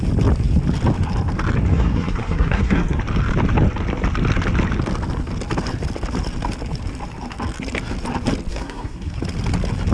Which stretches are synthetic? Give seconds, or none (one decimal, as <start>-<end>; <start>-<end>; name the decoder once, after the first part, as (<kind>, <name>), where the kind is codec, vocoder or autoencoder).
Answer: 1.7-3.0 (codec, SNAC); 8.5-9.2